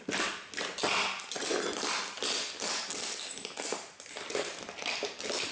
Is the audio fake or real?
real